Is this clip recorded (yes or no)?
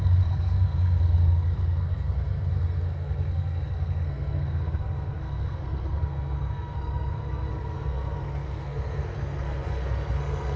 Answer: no